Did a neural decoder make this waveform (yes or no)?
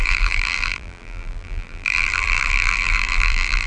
yes